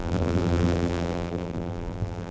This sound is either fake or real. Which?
fake